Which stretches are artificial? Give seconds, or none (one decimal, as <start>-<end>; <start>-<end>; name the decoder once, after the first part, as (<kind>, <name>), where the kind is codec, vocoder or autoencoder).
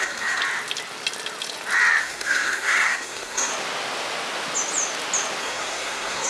0.0-0.4 (codec, SNAC); 2.0-3.5; 5.4-6.3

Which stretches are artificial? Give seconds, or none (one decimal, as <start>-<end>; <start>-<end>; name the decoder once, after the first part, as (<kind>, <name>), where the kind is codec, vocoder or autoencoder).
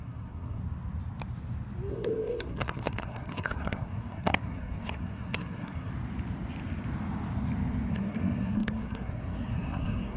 0.0-0.6 (codec, SNAC); 1.9-5.9; 7.9-10.2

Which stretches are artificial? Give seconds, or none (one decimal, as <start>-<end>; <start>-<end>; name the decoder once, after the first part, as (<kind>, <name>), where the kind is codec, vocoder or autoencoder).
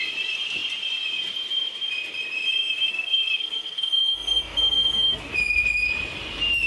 2.9-5.3 (codec, SNAC)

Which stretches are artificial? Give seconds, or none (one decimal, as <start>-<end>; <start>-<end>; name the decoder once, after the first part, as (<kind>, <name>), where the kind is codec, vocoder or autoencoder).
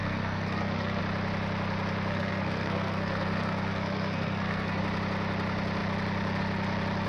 0.0-1.0 (codec, SNAC); 2.1-4.8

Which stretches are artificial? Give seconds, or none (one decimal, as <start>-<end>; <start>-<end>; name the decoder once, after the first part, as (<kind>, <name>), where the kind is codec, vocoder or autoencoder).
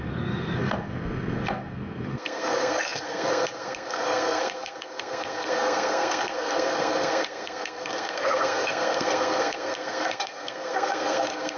0.0-11.6 (codec, SNAC)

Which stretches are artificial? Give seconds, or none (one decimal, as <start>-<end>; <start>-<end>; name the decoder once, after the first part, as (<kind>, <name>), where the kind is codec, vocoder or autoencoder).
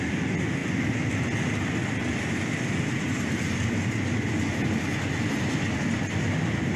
none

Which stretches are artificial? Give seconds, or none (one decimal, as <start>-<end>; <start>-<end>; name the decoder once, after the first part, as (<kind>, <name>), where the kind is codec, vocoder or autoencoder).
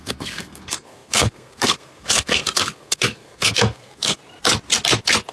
0.0-4.2 (codec, SNAC)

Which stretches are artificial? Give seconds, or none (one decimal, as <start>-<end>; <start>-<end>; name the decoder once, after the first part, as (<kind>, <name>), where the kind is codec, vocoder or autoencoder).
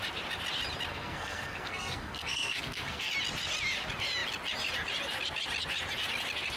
0.9-3.1 (codec, SNAC)